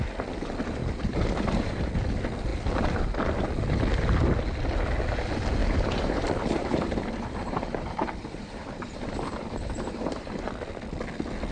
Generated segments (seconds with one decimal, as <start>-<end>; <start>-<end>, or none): 0.8-1.9; 5.6-10.5

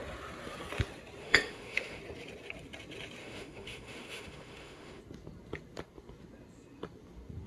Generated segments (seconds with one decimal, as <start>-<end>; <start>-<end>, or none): 1.2-2.0; 3.2-5.0

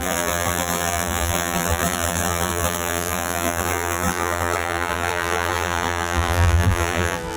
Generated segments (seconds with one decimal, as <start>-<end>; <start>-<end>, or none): 0.0-7.4

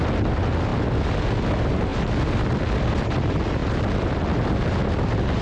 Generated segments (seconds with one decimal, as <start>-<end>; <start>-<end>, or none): 0.7-1.2; 1.9-3.2

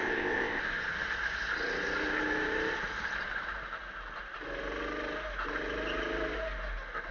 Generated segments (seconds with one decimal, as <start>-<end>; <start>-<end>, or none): 0.0-0.6